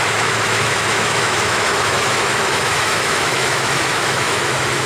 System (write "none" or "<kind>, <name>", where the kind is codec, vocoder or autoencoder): autoencoder, DAC-VAE